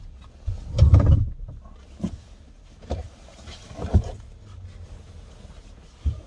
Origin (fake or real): real